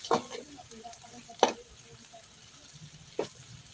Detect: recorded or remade recorded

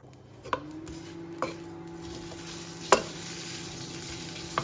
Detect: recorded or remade recorded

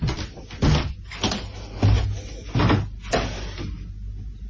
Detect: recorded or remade recorded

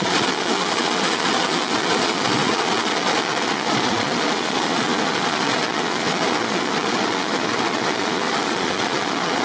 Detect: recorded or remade remade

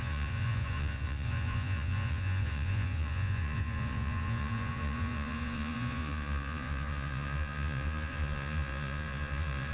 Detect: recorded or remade remade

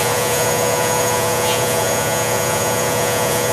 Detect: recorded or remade remade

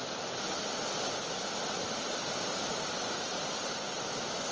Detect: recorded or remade recorded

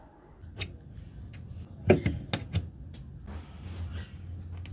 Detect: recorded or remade recorded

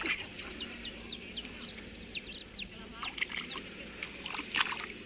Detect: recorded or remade recorded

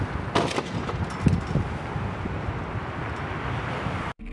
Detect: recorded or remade recorded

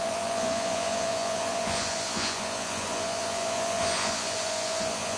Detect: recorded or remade remade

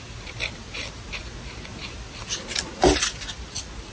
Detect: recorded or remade recorded